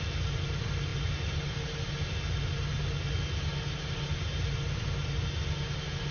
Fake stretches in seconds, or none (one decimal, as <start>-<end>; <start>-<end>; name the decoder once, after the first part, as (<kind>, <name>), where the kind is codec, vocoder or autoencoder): 0.0-6.1 (vocoder, BigVGAN v2)